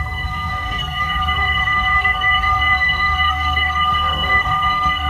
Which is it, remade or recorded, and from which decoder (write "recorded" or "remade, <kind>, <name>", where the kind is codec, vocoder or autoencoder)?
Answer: remade, codec, SNAC